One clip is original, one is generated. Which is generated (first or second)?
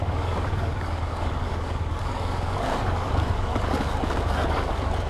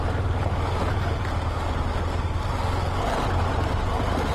first